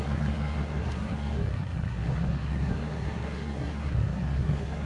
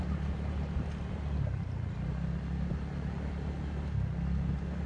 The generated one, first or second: first